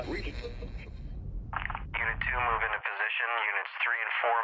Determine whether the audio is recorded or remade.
recorded